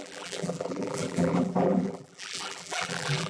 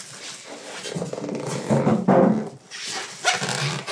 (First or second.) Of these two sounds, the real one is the second